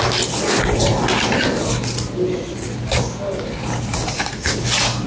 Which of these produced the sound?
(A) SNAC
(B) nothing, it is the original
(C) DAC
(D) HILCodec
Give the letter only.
B